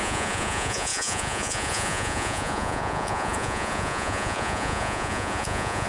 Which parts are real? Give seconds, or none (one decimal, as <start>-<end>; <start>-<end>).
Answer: none